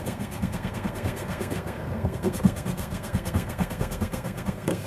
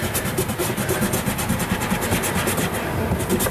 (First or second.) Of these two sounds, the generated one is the first